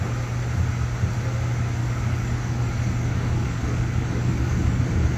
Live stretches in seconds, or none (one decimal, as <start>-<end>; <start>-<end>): 0.0-1.8; 4.8-5.2